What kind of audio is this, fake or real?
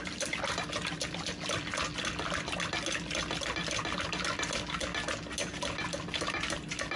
real